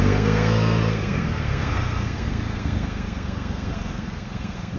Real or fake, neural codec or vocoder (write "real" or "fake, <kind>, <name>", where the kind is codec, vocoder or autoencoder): fake, codec, SNAC